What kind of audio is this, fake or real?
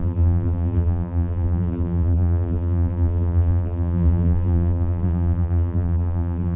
fake